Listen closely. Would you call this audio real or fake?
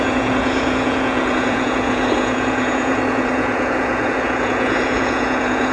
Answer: fake